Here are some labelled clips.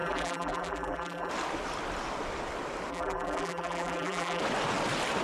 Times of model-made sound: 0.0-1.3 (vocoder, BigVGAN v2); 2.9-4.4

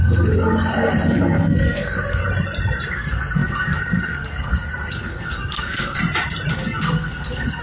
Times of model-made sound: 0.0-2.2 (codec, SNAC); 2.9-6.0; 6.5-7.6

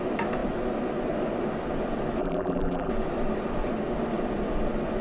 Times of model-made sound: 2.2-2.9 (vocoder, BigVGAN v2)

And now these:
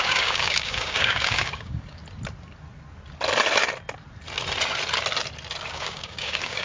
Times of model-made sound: 0.0-2.0 (codec, DAC); 5.7-6.6